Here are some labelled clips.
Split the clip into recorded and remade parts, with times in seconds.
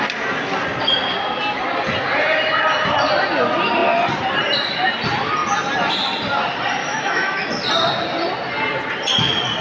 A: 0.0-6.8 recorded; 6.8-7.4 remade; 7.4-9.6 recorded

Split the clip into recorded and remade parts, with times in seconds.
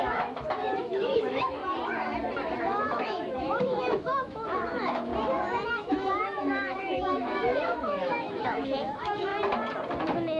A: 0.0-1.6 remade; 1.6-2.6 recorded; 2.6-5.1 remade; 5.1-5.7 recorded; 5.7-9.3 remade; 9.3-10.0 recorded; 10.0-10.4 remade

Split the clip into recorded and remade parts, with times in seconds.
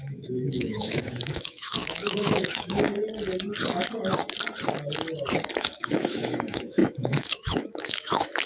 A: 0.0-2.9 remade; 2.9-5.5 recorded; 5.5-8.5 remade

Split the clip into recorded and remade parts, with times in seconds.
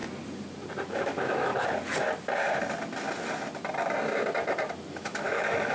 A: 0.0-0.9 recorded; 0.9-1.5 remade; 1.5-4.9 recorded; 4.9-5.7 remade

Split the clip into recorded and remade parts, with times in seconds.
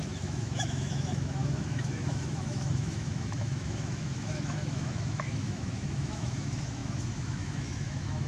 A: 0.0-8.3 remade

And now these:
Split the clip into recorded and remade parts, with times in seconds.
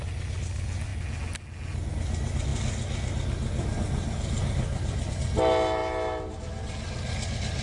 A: 0.0-7.6 recorded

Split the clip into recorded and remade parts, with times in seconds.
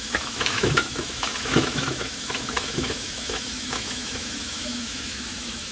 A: 0.0-5.7 remade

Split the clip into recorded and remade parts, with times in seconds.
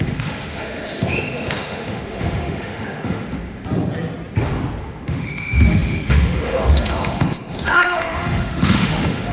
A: 0.0-3.6 remade; 3.6-4.8 recorded; 4.8-9.3 remade